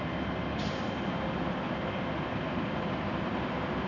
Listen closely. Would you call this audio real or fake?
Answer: real